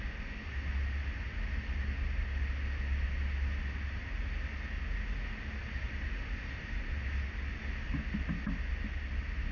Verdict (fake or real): real